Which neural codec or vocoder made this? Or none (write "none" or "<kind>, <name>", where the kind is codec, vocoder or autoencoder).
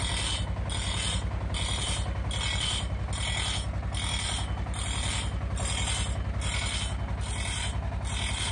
none